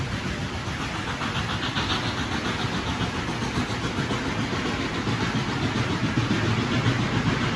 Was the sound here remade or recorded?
recorded